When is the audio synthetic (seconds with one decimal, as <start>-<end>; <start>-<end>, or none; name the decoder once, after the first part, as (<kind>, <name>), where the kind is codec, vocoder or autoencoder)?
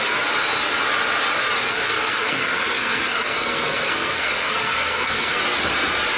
1.7-5.4 (codec, SNAC)